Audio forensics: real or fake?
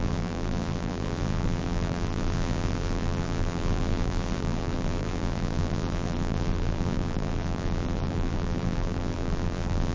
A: fake